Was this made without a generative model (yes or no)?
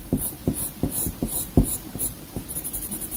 no